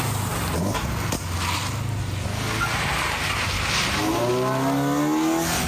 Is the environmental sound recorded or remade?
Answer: recorded